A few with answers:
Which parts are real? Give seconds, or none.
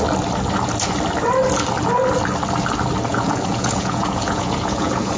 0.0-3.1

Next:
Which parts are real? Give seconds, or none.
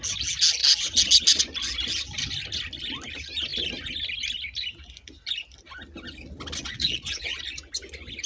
0.0-6.6; 7.4-8.3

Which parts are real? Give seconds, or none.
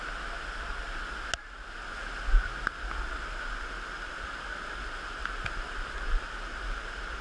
0.0-7.2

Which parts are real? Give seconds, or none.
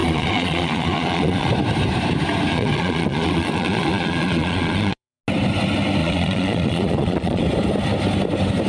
1.5-2.5; 5.2-6.0; 7.4-8.7